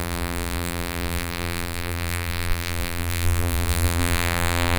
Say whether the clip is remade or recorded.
remade